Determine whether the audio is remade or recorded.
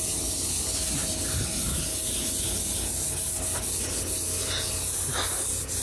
recorded